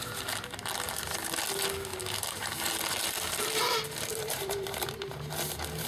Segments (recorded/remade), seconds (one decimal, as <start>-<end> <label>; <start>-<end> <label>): 0.0-1.9 recorded; 1.9-2.5 remade; 2.5-4.1 recorded; 4.1-5.1 remade; 5.1-5.9 recorded